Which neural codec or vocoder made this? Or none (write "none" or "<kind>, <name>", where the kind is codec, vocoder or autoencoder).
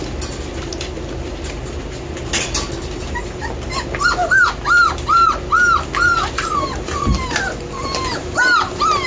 none